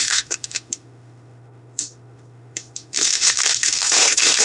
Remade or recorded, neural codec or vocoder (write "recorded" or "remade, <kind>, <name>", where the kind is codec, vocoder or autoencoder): remade, autoencoder, DAC-VAE